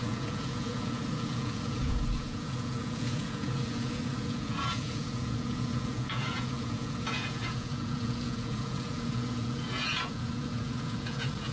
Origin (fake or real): fake